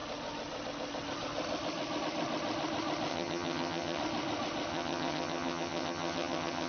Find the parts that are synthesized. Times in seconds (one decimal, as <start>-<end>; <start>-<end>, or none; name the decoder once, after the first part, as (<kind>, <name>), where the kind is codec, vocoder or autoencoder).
3.1-4.0 (vocoder, HiFi-GAN); 4.7-6.7